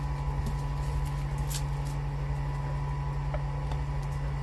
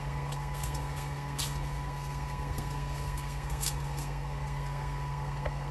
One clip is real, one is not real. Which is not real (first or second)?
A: second